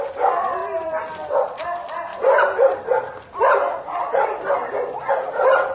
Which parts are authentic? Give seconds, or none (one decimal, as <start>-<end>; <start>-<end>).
0.0-0.6; 1.3-2.1; 5.1-5.7